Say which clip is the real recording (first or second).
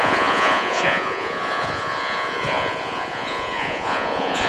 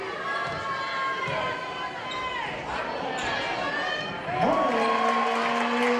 second